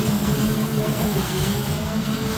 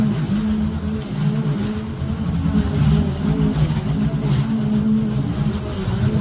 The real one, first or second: second